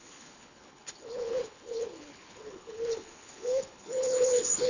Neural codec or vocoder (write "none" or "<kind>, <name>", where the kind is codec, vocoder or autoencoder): codec, HILCodec